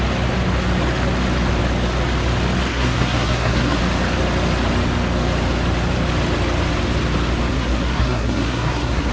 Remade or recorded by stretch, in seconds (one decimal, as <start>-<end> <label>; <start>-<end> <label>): 0.0-2.7 recorded; 2.7-3.8 remade; 3.8-7.5 recorded; 7.5-9.1 remade